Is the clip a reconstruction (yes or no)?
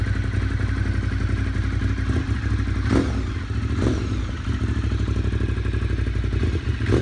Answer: no